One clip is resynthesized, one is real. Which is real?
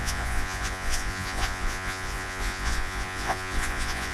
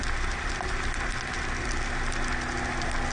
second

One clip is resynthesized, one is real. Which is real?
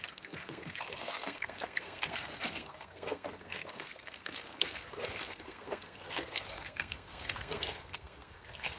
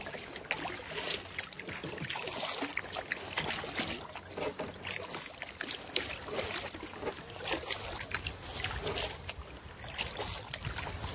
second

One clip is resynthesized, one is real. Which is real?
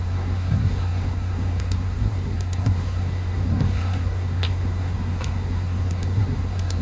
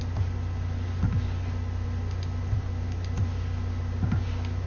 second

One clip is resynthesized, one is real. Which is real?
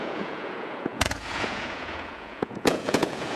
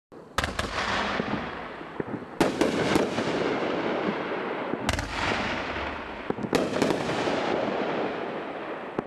second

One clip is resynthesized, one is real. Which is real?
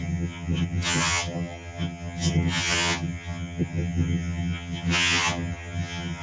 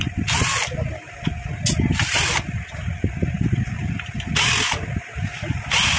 second